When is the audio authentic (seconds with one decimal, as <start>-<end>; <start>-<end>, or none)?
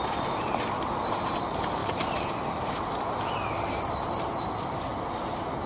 4.9-5.7